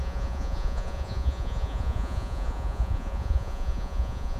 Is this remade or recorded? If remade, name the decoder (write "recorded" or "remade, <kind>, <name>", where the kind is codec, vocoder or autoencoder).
remade, vocoder, Vocos